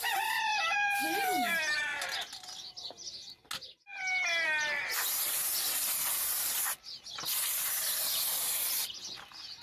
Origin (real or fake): real